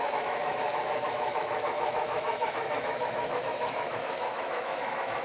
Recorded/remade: remade